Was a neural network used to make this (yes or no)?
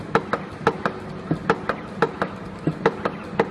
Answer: no